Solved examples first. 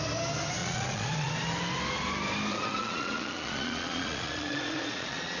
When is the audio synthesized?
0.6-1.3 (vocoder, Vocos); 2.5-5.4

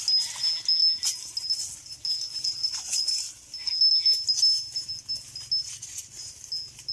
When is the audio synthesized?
2.3-3.1 (vocoder, Vocos); 5.6-6.3

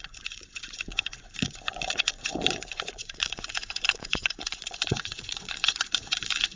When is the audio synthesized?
0.0-6.6 (vocoder, Vocos)

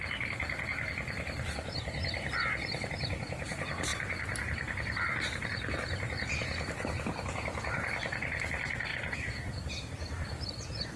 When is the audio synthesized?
none

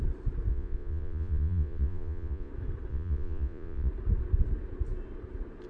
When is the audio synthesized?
0.5-2.5 (vocoder, Vocos); 2.9-3.9

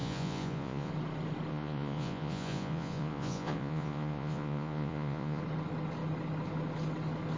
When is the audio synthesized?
0.0-0.9 (vocoder, Vocos); 1.5-5.4

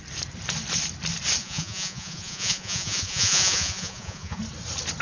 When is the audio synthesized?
1.4-4.4 (vocoder, Vocos)

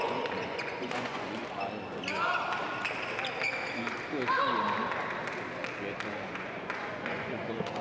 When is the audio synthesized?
0.0-1.4 (vocoder, Vocos); 6.1-7.8